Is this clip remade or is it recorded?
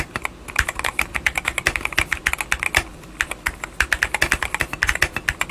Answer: recorded